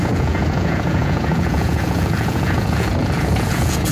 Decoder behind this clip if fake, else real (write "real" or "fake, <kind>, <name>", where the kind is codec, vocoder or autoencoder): fake, vocoder, Vocos